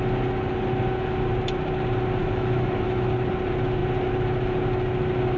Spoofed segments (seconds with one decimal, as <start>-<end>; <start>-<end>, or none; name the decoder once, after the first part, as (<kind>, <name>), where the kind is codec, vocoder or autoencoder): 2.2-3.1 (autoencoder, DAC-VAE)